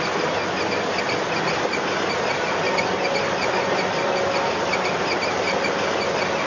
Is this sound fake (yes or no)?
no